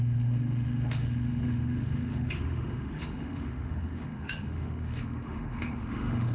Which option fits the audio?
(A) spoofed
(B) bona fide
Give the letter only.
A